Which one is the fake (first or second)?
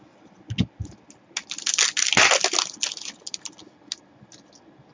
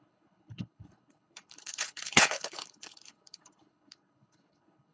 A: second